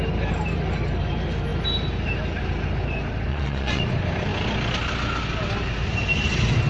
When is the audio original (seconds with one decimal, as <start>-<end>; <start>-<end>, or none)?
0.0-3.3; 3.8-6.7